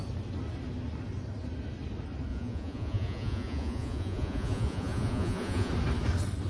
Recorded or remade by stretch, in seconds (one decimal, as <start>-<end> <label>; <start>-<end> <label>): 0.0-2.3 recorded; 2.3-5.7 remade; 5.7-6.5 recorded